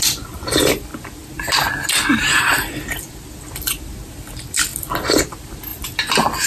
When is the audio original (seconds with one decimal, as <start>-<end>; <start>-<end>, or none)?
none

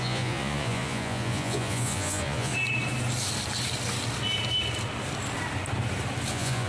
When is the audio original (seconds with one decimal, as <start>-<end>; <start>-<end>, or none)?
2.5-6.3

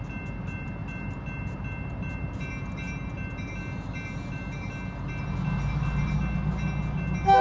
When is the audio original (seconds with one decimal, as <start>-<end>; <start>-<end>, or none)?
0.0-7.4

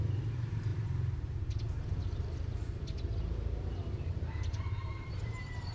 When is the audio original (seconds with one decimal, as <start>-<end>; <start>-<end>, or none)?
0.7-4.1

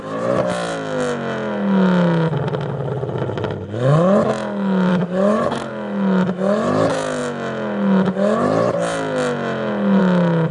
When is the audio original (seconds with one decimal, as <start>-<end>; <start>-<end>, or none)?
0.0-4.9; 5.7-10.5